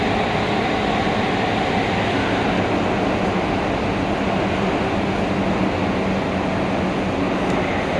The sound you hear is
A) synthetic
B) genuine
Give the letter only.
B